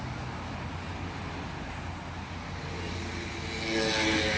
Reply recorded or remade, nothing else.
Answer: recorded